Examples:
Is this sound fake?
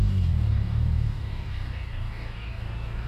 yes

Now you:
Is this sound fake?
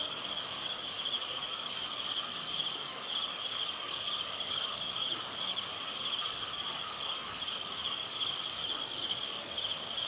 yes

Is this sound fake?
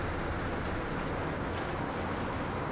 no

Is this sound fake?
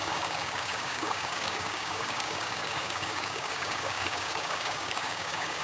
yes